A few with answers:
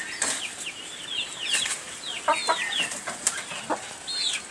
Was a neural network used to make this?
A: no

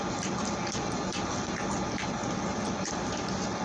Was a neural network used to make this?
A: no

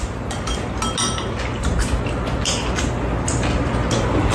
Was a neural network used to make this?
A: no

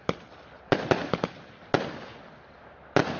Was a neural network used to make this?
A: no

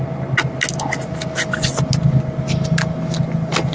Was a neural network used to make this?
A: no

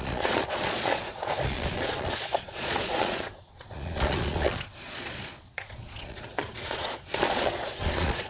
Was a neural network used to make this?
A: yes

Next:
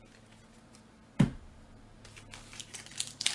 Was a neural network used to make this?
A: no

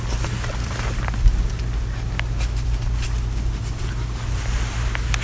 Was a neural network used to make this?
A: no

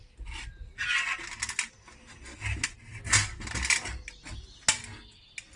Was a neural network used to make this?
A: no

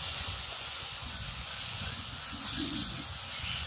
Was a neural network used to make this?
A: yes